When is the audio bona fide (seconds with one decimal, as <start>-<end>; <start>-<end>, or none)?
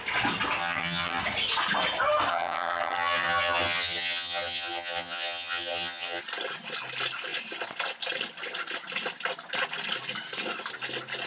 0.0-0.6; 1.2-2.3; 6.2-11.3